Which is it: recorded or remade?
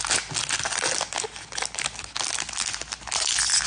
recorded